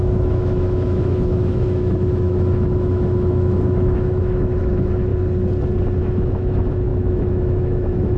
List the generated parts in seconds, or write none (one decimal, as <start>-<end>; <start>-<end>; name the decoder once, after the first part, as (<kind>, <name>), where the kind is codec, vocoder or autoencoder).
0.0-5.1 (autoencoder, DAC-VAE); 6.0-8.2